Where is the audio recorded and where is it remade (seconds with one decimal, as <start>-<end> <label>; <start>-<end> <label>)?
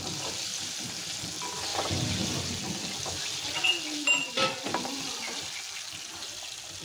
0.0-0.5 recorded; 0.5-1.2 remade; 1.2-6.8 recorded